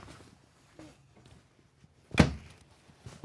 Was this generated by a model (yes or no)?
no